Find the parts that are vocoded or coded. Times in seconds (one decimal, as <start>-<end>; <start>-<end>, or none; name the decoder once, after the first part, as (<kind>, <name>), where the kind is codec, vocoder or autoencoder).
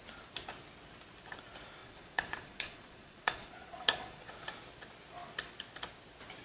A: 1.8-4.3 (vocoder, Vocos)